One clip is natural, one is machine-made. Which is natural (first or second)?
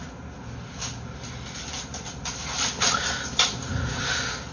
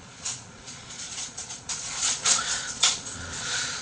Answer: first